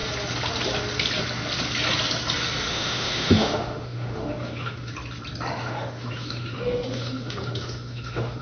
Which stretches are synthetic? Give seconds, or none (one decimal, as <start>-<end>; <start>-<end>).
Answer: 2.7-4.9; 5.5-8.4